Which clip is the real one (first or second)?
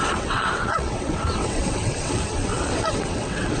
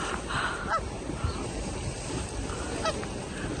second